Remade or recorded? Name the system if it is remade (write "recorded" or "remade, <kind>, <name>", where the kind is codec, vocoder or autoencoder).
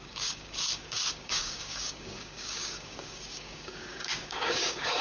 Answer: remade, codec, DAC